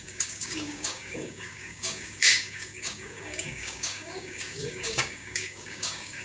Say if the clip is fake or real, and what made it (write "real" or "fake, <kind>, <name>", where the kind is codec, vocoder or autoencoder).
fake, codec, DAC